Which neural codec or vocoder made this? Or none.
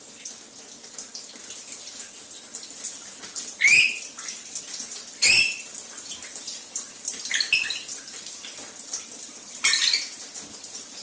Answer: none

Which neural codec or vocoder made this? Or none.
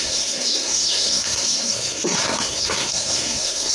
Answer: codec, SNAC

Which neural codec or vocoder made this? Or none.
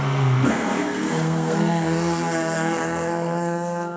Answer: codec, SNAC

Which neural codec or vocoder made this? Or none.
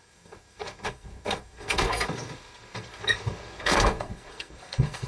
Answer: codec, SNAC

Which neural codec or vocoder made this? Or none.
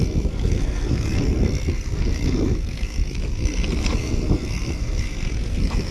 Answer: codec, SNAC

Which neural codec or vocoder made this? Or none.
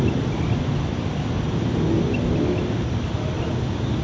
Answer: none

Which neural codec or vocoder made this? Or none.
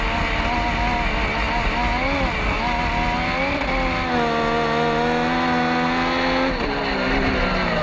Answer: none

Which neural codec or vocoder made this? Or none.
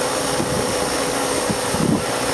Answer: none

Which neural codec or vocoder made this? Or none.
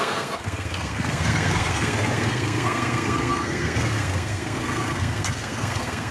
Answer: codec, SNAC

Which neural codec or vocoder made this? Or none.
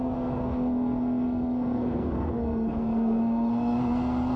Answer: codec, SNAC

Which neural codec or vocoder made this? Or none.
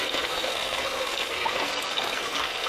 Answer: codec, SNAC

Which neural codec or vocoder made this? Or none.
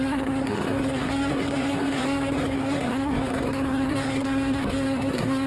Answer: codec, SNAC